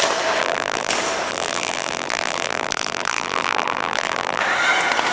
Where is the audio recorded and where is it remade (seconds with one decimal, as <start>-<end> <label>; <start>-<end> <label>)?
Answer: 0.0-0.4 recorded; 0.4-0.9 remade; 0.9-1.3 recorded; 1.3-4.4 remade; 4.4-5.1 recorded

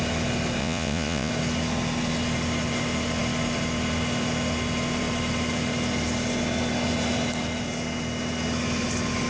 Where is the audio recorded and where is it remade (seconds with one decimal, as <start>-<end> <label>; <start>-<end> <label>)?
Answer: 0.0-0.6 recorded; 0.6-1.3 remade; 1.3-9.3 recorded

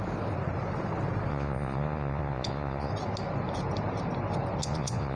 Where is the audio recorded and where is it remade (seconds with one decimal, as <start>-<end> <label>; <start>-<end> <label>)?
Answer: 0.0-1.3 recorded; 1.3-2.9 remade; 2.9-4.6 recorded; 4.6-5.2 remade

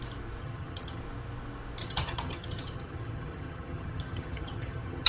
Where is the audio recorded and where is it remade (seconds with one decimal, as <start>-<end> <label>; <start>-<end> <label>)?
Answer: 0.0-0.4 recorded; 0.4-1.0 remade; 1.0-1.8 recorded; 1.8-5.1 remade

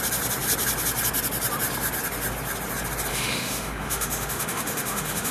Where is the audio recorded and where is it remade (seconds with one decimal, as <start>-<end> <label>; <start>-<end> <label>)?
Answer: 0.0-3.1 recorded; 3.1-5.3 remade